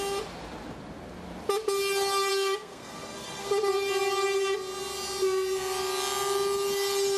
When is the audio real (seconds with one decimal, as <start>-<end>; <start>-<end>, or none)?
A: 0.0-2.3; 3.5-7.2